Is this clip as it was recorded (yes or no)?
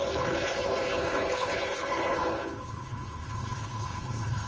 no